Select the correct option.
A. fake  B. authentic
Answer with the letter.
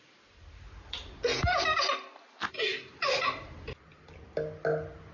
B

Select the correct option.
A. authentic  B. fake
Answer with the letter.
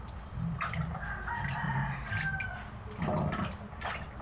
A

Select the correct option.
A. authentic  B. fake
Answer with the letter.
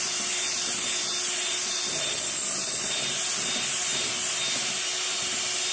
A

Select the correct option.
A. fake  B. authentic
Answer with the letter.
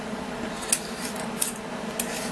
B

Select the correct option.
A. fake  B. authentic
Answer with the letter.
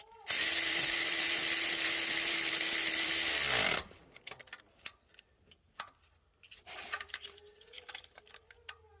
A